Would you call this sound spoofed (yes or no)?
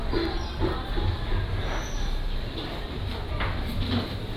no